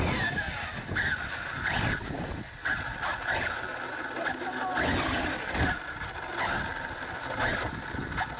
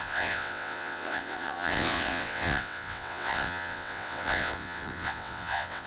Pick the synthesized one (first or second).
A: second